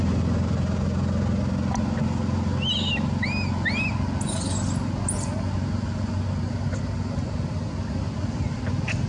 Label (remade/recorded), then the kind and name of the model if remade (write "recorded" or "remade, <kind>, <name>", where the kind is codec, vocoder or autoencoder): recorded